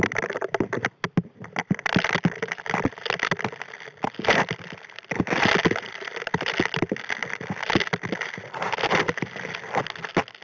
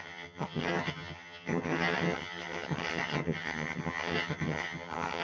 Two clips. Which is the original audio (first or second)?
first